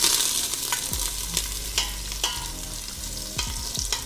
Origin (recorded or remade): recorded